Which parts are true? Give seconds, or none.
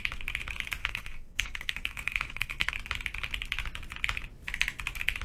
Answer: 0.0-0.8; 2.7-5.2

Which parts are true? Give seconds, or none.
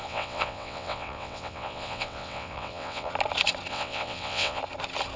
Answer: 3.1-3.7; 4.6-5.2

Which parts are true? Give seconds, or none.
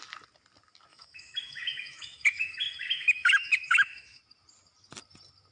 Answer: 0.0-0.9; 4.2-5.5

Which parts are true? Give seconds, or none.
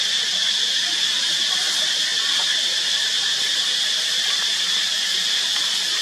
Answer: 0.0-6.0